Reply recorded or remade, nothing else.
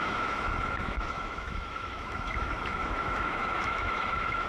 remade